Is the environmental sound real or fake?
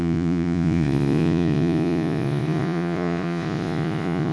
fake